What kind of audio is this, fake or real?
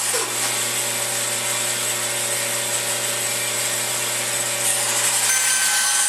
real